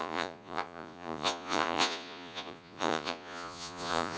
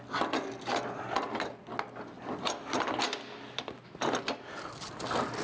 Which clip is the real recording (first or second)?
second